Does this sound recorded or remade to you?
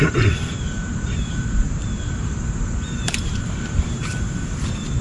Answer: remade